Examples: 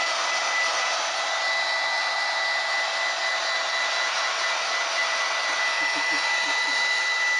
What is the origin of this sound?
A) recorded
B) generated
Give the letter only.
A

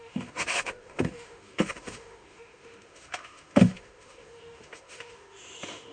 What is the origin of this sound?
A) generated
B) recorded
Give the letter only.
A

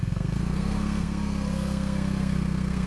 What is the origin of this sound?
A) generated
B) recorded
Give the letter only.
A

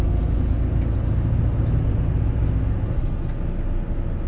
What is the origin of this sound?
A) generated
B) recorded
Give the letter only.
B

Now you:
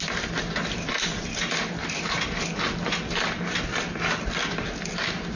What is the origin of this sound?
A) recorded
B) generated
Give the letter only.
A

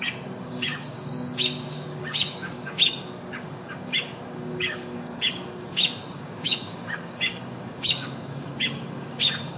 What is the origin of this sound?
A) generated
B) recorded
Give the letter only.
A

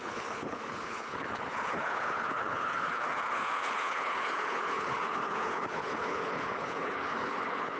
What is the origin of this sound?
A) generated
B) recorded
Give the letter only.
A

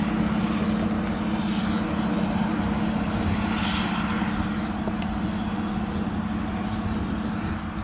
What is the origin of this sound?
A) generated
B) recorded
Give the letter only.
B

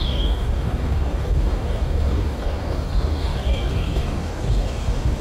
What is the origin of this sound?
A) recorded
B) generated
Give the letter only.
B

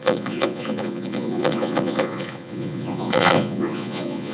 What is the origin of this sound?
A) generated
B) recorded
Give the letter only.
A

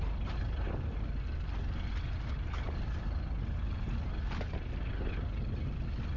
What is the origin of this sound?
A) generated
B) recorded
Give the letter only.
B